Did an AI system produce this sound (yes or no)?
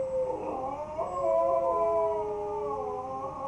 no